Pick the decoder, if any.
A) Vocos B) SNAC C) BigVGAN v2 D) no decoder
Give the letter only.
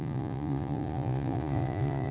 A